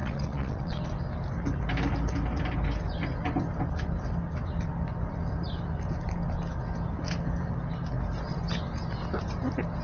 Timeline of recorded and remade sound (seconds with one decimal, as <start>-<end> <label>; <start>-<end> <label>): 0.0-0.8 remade; 0.8-9.8 recorded